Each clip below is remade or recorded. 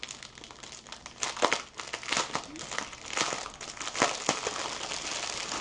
recorded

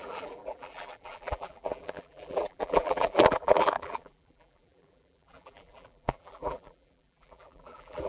remade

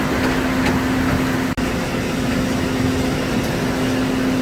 recorded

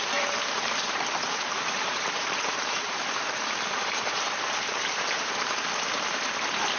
remade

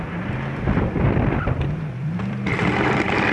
remade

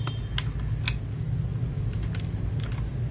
recorded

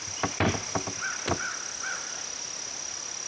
recorded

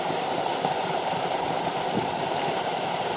remade